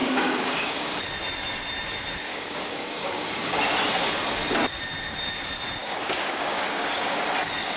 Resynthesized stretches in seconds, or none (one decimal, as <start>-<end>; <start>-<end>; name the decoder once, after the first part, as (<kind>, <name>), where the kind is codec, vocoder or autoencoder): 0.0-1.0 (codec, DAC); 2.3-3.6; 5.8-7.2